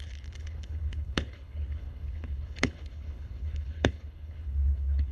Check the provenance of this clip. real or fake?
fake